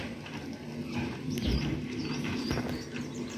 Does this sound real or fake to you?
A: real